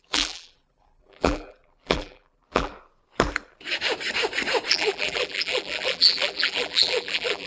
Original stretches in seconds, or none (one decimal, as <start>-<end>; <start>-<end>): 2.7-4.7